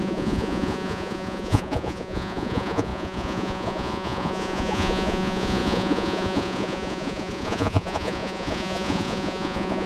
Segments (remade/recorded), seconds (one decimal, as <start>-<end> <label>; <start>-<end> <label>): 0.0-9.9 remade